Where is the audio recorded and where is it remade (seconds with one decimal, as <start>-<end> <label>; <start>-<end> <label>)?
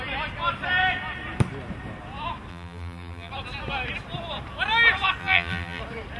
0.0-2.5 recorded; 2.5-3.3 remade; 3.3-5.2 recorded; 5.2-5.8 remade; 5.8-6.2 recorded